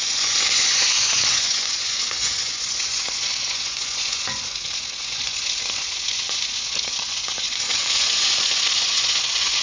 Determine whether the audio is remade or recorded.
remade